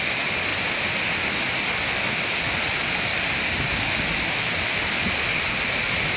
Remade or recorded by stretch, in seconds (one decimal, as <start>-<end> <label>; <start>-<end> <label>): 0.0-3.1 recorded; 3.1-3.8 remade; 3.8-5.3 recorded; 5.3-6.2 remade